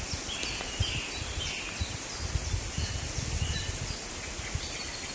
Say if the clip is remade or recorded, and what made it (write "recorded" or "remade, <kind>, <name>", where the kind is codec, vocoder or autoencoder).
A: recorded